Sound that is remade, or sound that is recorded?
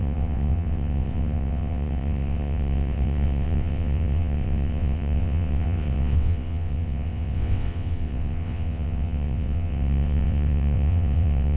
remade